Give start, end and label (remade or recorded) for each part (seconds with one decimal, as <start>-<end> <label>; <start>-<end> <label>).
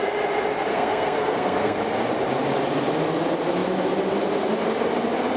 0.0-0.7 recorded; 0.7-1.8 remade; 1.8-5.4 recorded